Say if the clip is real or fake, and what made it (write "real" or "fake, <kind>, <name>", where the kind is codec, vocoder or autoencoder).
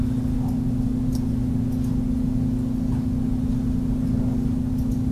real